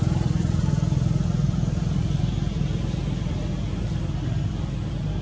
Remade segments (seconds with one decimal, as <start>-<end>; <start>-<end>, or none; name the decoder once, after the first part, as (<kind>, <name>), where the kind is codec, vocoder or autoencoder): none